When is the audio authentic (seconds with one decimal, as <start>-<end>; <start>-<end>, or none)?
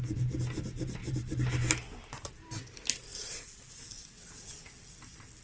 0.0-1.0; 2.6-3.1; 3.8-5.4